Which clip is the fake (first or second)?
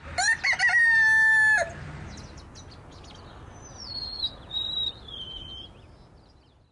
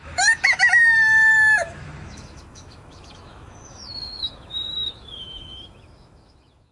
second